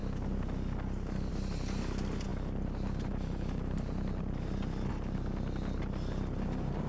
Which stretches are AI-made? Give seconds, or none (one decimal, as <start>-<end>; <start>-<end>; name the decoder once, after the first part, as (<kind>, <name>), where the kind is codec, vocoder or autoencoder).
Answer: none